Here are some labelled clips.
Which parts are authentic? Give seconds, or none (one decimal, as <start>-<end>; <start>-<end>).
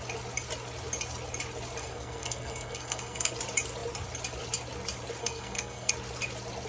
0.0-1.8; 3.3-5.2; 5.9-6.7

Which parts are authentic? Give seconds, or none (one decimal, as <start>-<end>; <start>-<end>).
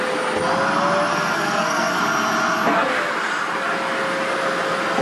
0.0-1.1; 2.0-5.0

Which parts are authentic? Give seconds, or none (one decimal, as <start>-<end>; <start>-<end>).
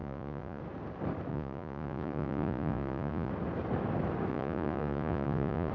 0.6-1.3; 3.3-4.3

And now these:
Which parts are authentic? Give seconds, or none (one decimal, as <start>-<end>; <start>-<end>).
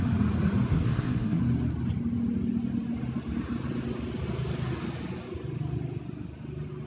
0.0-0.7; 1.4-6.9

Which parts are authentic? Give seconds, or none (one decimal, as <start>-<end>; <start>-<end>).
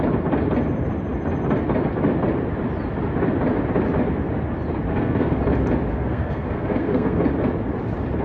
0.0-4.9; 5.4-5.9; 7.2-8.2